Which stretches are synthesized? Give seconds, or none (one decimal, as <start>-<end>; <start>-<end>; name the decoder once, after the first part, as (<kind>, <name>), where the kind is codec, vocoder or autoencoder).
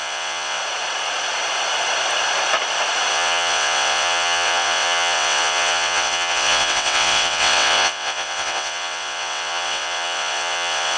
0.0-0.6 (vocoder, WaveNeXt); 3.1-11.0